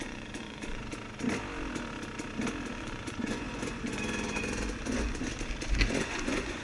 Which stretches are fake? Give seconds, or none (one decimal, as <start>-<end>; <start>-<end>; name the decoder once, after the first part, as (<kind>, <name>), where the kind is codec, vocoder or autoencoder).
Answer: 0.0-0.8 (vocoder, Vocos); 2.7-5.3; 5.9-6.6